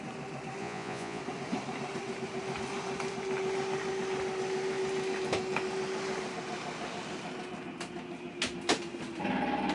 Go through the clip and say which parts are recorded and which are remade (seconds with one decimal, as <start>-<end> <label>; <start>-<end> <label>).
0.0-0.6 recorded; 0.6-1.2 remade; 1.2-9.7 recorded